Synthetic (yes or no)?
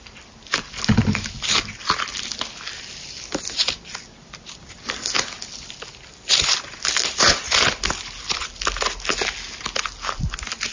no